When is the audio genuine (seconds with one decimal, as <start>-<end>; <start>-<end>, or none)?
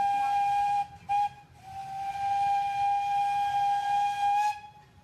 0.0-5.0